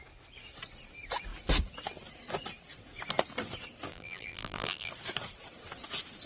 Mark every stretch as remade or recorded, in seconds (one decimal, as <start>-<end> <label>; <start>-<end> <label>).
0.0-3.9 recorded; 3.9-4.9 remade; 4.9-6.3 recorded